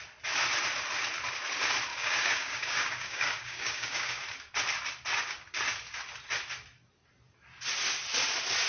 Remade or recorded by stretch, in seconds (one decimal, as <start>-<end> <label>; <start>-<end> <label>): 0.0-1.9 recorded; 1.9-4.2 remade; 4.2-8.7 recorded